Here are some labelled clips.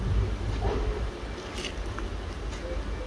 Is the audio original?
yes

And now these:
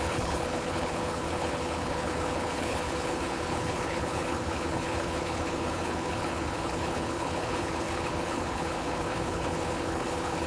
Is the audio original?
no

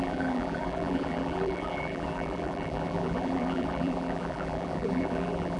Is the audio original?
no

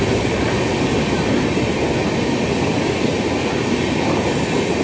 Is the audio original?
yes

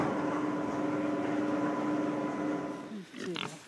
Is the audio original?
yes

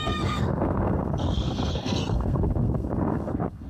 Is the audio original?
no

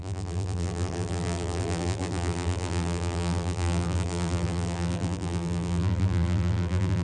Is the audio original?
no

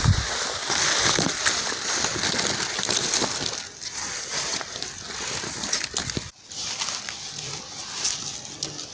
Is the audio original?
yes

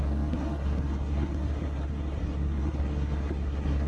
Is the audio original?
no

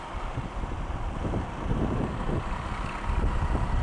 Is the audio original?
yes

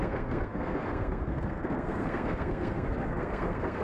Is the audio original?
no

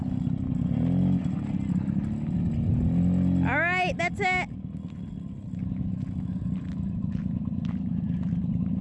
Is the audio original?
yes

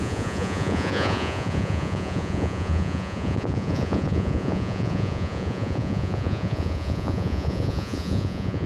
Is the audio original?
no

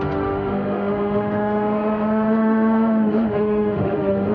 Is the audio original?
no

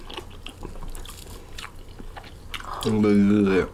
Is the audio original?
yes